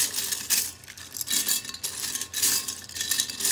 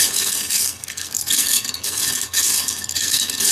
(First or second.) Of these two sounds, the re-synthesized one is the second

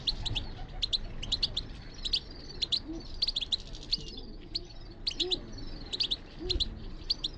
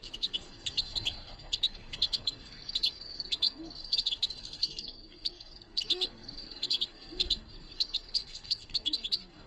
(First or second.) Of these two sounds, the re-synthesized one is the second